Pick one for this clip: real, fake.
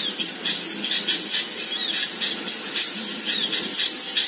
real